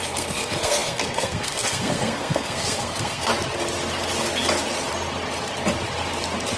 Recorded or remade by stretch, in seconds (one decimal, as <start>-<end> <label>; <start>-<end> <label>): 0.0-3.3 remade; 3.3-6.6 recorded

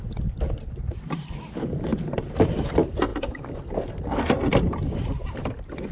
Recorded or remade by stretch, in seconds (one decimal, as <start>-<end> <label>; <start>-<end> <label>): 0.0-5.9 recorded

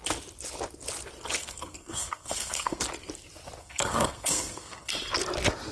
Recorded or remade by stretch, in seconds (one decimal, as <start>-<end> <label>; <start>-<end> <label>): 0.0-1.4 recorded; 1.4-2.8 remade; 2.8-3.6 recorded; 3.6-4.9 remade; 4.9-5.7 recorded

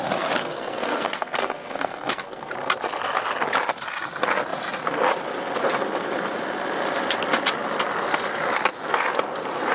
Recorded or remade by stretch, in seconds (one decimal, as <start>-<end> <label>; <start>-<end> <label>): 0.0-0.4 recorded; 0.4-2.5 remade; 2.5-9.7 recorded

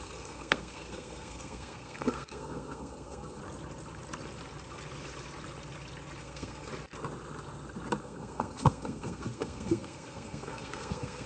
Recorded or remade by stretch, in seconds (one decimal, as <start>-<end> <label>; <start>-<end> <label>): 0.0-3.4 remade; 3.4-6.2 recorded; 6.2-6.7 remade; 6.7-8.0 recorded; 8.0-11.3 remade

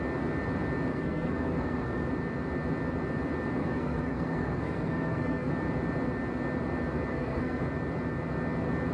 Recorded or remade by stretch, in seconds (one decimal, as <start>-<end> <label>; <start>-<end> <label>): 0.0-0.9 recorded; 0.9-2.1 remade; 2.1-3.6 recorded; 3.6-5.5 remade; 5.5-7.1 recorded; 7.1-7.6 remade; 7.6-8.9 recorded

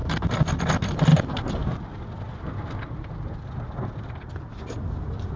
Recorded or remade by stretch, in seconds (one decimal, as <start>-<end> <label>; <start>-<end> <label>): 0.0-5.4 recorded

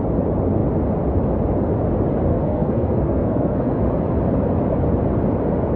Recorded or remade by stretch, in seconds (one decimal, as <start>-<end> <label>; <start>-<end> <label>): 0.0-2.3 recorded; 2.3-3.8 remade; 3.8-5.8 recorded